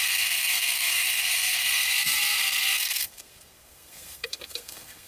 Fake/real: fake